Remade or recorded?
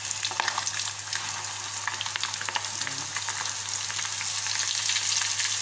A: recorded